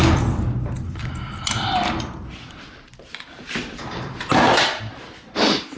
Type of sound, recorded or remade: recorded